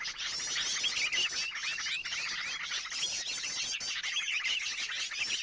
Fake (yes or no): no